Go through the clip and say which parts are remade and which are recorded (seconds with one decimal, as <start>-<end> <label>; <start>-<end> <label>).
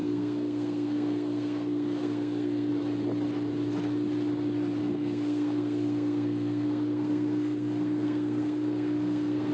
0.0-2.7 remade; 2.7-4.8 recorded; 4.8-9.5 remade